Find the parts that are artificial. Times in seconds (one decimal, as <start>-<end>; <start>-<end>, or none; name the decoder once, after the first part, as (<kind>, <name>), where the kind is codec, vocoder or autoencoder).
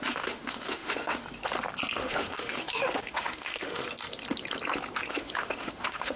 0.0-1.2 (autoencoder, DAC-VAE); 2.0-3.8; 5.1-6.2